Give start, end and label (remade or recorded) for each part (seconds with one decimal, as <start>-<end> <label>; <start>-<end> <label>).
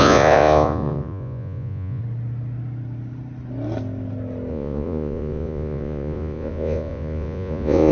0.0-2.0 remade; 2.0-4.5 recorded; 4.5-7.9 remade